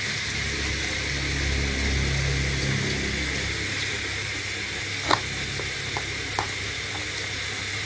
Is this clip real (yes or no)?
yes